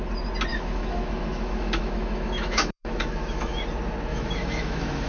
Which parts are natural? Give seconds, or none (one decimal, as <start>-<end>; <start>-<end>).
0.0-0.5; 3.6-4.1